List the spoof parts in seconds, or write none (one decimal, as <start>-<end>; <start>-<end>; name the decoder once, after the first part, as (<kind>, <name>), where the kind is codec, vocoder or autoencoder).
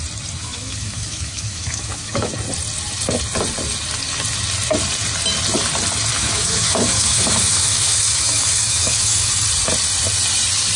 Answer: 0.4-2.3 (autoencoder, DAC-VAE); 6.1-9.3